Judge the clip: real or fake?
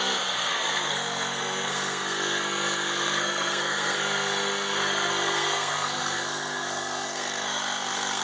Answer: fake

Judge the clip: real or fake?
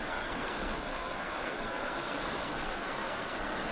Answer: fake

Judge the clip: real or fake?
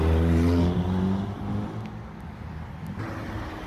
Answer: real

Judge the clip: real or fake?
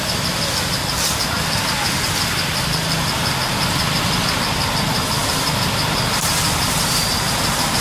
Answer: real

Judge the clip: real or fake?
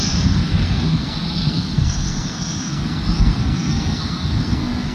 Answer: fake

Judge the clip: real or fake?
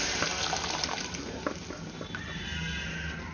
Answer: real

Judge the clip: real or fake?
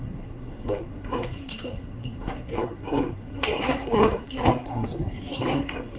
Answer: fake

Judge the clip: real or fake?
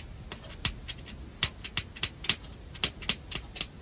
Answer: real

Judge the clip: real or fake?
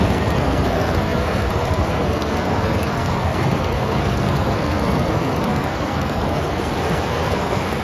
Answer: fake